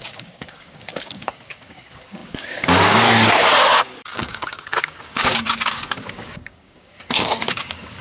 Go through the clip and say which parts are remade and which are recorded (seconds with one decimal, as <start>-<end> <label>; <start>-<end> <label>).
0.0-8.0 remade